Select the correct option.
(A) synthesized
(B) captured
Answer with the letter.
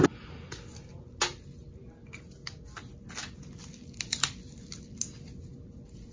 B